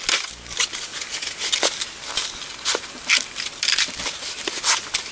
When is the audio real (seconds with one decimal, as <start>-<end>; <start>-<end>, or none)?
0.0-5.1

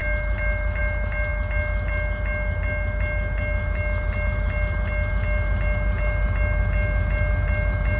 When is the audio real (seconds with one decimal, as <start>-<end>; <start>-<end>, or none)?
0.0-8.0